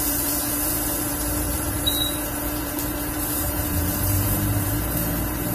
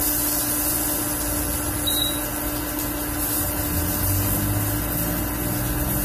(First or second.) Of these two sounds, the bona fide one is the second